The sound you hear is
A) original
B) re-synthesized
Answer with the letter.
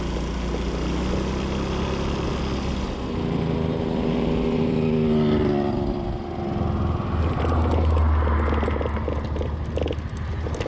A